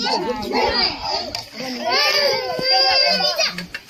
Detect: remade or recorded recorded